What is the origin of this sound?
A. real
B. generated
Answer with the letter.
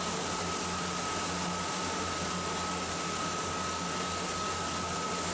A